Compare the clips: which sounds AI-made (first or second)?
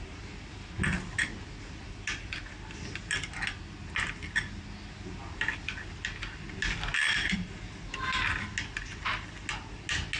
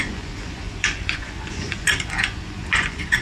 second